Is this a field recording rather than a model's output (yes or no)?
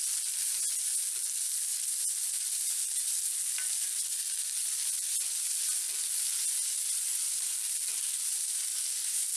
yes